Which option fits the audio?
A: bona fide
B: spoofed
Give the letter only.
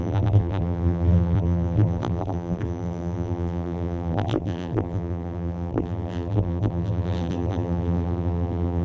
B